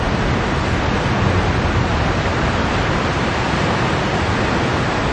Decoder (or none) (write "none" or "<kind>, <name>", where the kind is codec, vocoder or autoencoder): none